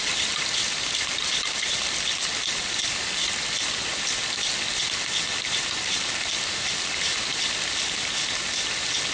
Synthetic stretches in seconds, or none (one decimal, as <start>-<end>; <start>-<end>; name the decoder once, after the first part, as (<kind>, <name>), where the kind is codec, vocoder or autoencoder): none